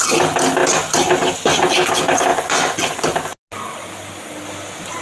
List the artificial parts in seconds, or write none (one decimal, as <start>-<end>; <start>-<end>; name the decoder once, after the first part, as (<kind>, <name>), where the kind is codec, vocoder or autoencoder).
2.3-3.0 (vocoder, Vocos)